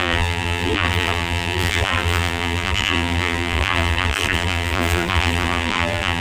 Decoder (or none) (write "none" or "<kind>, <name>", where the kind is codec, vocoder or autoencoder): vocoder, BigVGAN v2